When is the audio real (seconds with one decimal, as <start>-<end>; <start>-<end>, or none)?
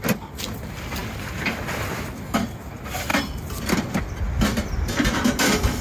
0.0-1.0; 2.7-3.1; 4.0-5.8